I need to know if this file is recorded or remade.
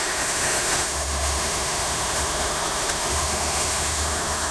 remade